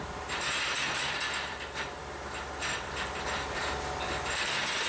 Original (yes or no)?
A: no